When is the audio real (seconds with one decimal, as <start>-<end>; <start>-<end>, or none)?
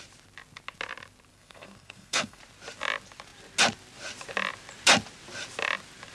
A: 0.0-1.3; 2.4-6.1